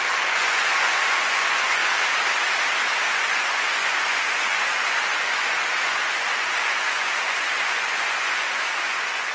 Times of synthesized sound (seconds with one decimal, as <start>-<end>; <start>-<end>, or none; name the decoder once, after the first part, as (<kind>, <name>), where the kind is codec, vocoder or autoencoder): 0.0-1.8 (vocoder, Vocos); 3.1-9.3